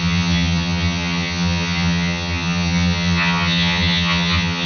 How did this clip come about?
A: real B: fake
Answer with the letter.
B